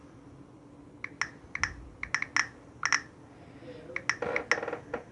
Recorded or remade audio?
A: recorded